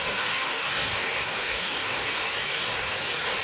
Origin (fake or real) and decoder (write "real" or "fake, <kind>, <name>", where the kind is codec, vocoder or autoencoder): fake, codec, DAC